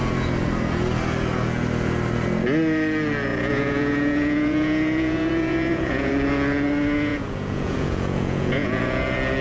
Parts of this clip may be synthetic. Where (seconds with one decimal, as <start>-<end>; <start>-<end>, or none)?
3.3-6.1; 7.1-8.8

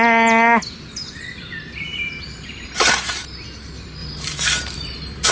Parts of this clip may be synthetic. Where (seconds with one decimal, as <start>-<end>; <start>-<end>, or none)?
1.9-2.7; 4.0-5.3

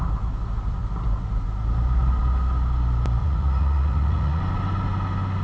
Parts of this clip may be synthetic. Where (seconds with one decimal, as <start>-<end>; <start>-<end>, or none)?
3.2-4.4

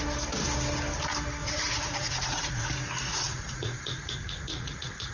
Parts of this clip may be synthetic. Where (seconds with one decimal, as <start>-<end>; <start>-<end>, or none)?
1.4-2.7; 3.1-5.1

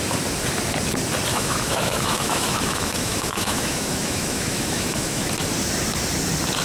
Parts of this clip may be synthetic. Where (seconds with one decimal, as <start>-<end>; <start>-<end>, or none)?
1.3-5.3